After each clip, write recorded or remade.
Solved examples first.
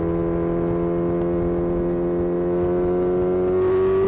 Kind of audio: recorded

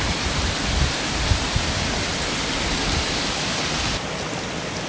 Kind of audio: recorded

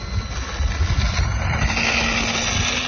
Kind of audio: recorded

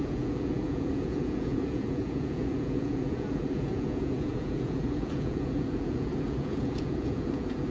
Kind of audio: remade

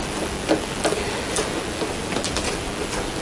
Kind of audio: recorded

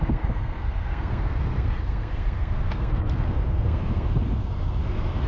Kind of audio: remade